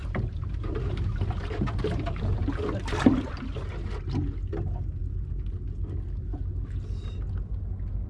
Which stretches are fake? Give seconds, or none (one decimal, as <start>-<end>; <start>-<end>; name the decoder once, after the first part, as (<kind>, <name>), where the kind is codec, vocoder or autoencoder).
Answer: 0.0-2.5 (vocoder, BigVGAN v2)